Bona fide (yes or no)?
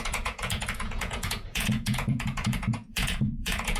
no